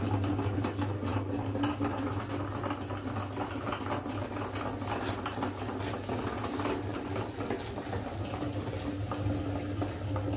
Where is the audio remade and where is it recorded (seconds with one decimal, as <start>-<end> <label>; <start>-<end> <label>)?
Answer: 0.0-1.1 recorded; 1.1-2.2 remade; 2.2-6.9 recorded; 6.9-7.4 remade; 7.4-10.4 recorded